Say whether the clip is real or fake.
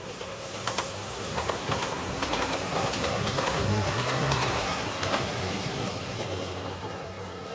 fake